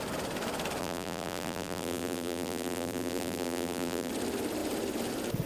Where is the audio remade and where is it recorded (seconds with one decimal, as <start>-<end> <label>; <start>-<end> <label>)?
0.0-0.8 recorded; 0.8-4.1 remade; 4.1-5.5 recorded